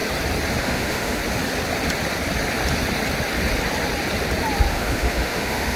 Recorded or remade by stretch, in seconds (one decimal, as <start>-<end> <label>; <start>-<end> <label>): 0.0-0.6 recorded; 0.6-1.2 remade; 1.2-4.7 recorded; 4.7-5.8 remade